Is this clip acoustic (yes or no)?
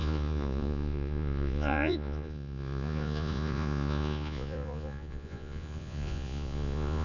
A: no